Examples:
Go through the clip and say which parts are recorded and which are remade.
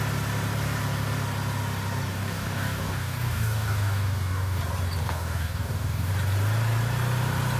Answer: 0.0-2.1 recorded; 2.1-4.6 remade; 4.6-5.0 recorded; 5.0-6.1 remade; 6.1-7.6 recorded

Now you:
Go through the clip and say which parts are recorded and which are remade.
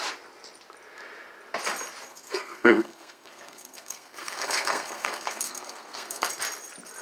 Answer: 0.0-2.1 recorded; 2.1-6.3 remade; 6.3-7.0 recorded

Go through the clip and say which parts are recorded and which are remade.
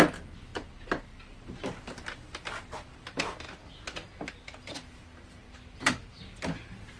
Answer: 0.0-3.6 remade; 3.6-4.3 recorded; 4.3-7.0 remade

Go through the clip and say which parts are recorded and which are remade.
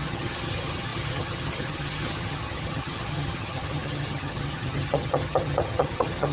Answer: 0.0-6.3 remade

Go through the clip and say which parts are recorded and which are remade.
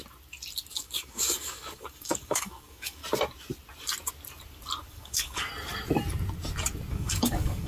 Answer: 0.0-0.7 recorded; 0.7-3.0 remade; 3.0-4.9 recorded; 4.9-5.5 remade; 5.5-6.9 recorded; 6.9-7.7 remade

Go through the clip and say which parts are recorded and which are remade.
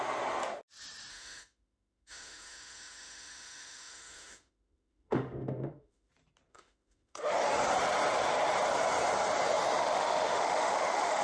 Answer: 0.0-1.1 recorded; 1.1-6.1 remade; 6.1-6.5 recorded; 6.5-7.3 remade; 7.3-9.8 recorded; 9.8-11.2 remade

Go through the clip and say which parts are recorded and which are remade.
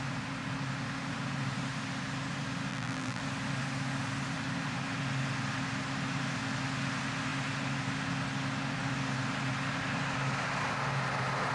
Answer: 0.0-2.7 recorded; 2.7-3.2 remade; 3.2-11.5 recorded